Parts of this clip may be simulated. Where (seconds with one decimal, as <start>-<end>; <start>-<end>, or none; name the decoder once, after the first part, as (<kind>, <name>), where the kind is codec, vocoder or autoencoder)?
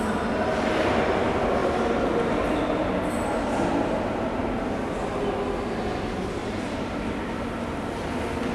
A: 1.6-2.6 (vocoder, BigVGAN v2); 6.4-7.1